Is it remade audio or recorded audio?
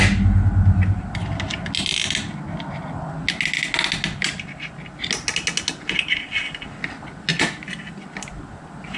recorded